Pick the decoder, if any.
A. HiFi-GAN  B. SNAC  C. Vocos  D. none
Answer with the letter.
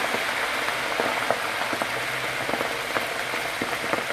D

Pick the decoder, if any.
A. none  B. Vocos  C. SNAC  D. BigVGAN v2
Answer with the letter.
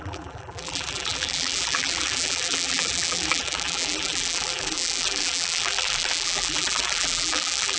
D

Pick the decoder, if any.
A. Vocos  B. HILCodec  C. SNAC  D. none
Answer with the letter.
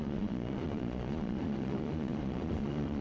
A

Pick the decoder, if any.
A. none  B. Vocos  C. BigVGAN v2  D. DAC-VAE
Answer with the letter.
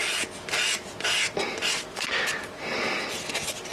A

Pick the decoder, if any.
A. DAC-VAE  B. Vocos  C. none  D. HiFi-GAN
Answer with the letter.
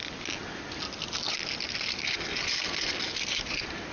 C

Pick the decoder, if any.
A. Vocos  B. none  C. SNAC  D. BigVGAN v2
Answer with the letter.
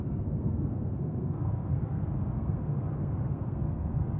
C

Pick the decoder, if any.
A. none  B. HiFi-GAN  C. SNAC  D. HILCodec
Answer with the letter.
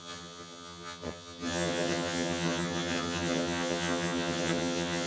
B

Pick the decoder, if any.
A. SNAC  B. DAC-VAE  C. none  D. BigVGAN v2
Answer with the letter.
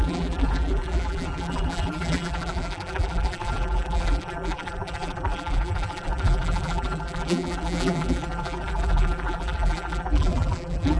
D